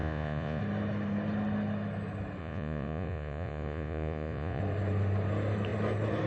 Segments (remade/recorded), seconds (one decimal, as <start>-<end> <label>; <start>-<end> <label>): 0.0-0.6 remade; 0.6-2.4 recorded; 2.4-4.6 remade; 4.6-6.3 recorded